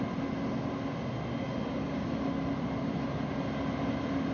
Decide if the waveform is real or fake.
real